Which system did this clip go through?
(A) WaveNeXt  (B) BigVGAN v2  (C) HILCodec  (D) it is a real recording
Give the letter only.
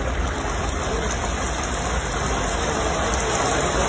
D